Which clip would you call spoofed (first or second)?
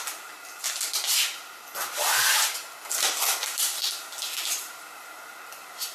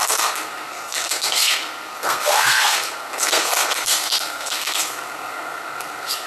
second